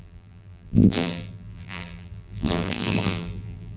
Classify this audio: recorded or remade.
remade